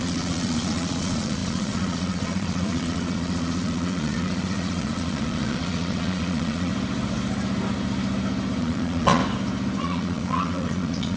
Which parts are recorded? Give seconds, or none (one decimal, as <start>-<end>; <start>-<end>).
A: 6.7-8.6; 9.2-9.8